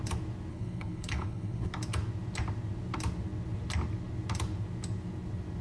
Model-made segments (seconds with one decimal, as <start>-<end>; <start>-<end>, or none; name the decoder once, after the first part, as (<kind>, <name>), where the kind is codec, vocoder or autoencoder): 0.5-1.7 (codec, HILCodec)